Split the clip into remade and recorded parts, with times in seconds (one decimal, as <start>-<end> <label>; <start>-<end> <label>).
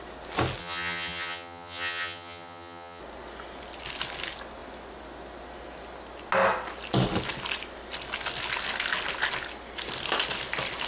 0.0-0.6 recorded; 0.6-3.0 remade; 3.0-10.9 recorded